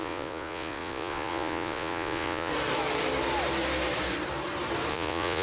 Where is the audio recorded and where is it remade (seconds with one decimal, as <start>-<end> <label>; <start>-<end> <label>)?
0.0-2.5 remade; 2.5-4.9 recorded; 4.9-5.4 remade